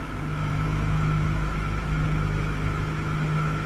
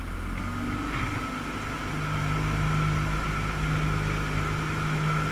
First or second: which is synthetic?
first